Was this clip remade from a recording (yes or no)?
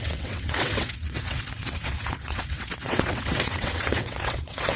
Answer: yes